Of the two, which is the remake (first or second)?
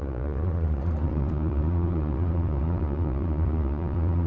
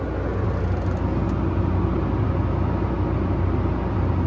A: first